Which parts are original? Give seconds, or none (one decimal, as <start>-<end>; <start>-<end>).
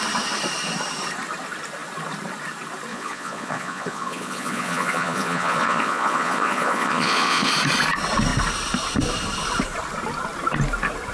0.0-2.9; 7.5-11.1